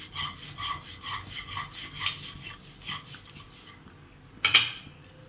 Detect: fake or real real